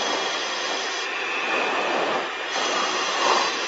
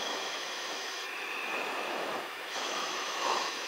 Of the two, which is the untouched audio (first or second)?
first